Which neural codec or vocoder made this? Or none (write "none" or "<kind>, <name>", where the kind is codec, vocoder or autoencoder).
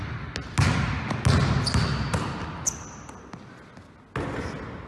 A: none